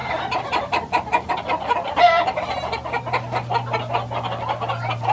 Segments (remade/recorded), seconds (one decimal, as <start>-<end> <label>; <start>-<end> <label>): 0.0-1.3 remade; 1.3-5.1 recorded